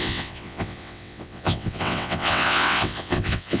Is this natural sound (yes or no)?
no